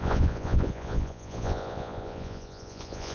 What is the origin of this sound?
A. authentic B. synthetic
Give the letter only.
B